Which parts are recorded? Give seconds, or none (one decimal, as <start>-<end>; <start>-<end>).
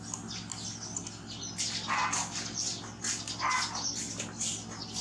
0.0-5.0